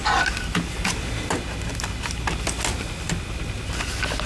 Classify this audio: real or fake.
real